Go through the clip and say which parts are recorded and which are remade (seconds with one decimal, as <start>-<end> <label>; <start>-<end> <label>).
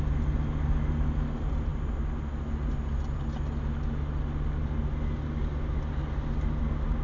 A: 0.0-7.0 recorded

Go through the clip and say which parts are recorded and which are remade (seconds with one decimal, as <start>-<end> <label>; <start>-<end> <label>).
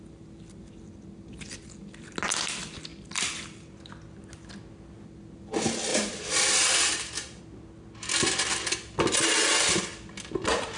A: 0.0-5.9 recorded; 5.9-7.4 remade; 7.4-10.8 recorded